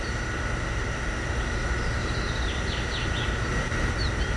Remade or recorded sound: recorded